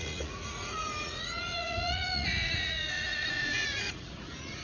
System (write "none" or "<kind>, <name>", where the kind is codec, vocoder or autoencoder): vocoder, Vocos